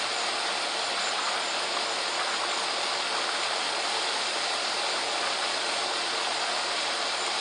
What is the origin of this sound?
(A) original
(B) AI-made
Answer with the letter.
A